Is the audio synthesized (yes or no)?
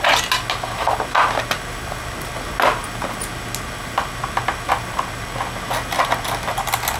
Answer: no